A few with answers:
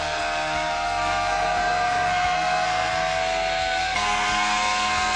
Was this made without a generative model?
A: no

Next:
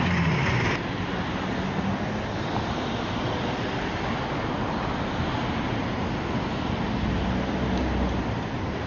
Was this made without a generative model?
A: yes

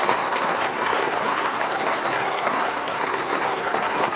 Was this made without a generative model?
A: no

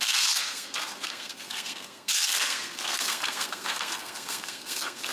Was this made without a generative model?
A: no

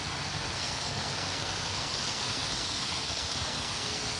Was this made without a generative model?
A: no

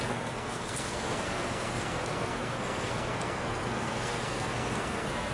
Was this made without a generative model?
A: no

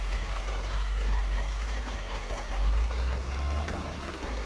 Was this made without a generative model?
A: no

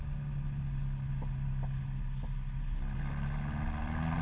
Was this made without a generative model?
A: yes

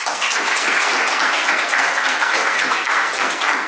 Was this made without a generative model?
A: no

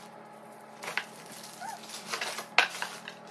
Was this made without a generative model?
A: yes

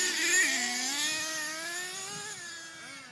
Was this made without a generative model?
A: yes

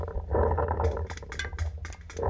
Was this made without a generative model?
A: yes